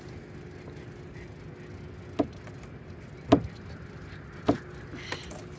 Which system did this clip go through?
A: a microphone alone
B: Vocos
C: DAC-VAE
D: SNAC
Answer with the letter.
A